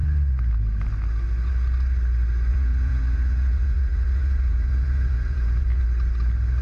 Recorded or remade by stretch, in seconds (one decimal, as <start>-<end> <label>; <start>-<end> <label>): 0.0-2.5 recorded; 2.5-5.8 remade; 5.8-6.6 recorded